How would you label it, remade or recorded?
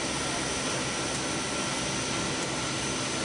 recorded